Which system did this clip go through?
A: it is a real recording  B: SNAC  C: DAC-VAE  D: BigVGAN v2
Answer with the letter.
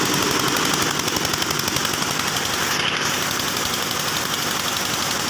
A